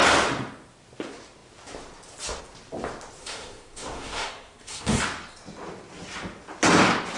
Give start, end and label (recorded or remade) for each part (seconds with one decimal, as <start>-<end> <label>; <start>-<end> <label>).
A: 0.0-3.2 recorded; 3.2-5.0 remade; 5.0-7.2 recorded